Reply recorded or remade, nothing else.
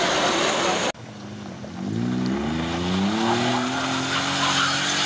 recorded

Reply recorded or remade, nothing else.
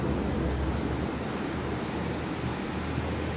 recorded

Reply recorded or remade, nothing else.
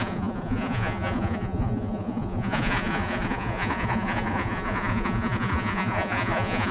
remade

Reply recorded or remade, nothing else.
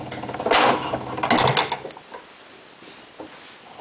recorded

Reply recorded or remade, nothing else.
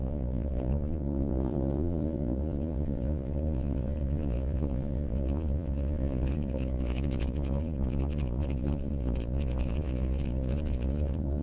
remade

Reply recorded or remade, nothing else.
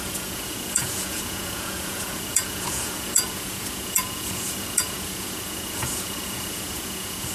remade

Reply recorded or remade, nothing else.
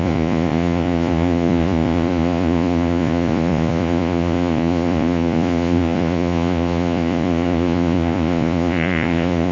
remade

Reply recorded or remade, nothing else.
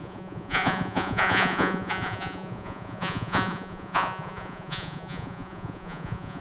remade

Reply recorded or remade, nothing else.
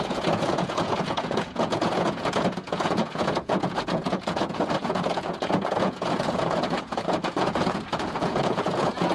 remade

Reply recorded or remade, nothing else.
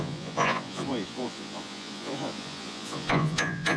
remade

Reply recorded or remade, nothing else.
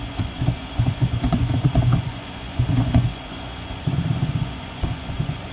remade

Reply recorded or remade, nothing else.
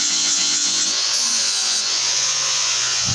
remade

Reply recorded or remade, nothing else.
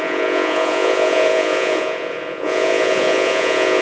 remade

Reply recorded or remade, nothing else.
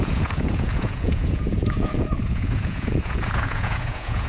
remade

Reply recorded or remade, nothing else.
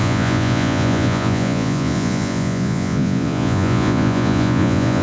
remade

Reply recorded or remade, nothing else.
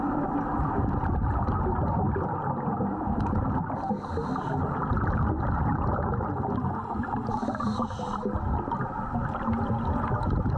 recorded